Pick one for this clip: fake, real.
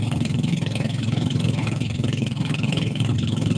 fake